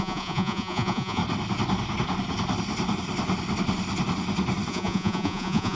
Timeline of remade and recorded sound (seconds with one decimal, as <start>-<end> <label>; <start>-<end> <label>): 0.0-1.2 remade; 1.2-4.7 recorded; 4.7-5.8 remade